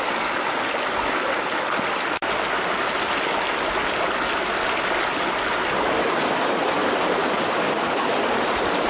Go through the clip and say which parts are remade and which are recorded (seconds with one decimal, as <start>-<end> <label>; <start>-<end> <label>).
0.0-7.2 recorded; 7.2-8.2 remade; 8.2-8.9 recorded